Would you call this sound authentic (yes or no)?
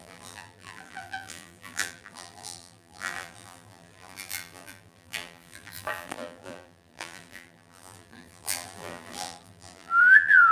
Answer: no